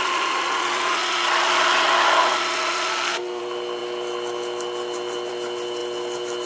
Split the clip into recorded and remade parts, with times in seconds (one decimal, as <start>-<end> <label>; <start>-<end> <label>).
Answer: 0.0-2.9 recorded; 2.9-3.4 remade; 3.4-6.5 recorded